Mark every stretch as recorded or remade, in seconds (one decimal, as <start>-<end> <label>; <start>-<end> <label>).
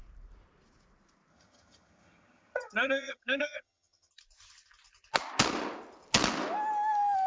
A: 0.0-1.3 recorded; 1.3-4.1 remade; 4.1-7.3 recorded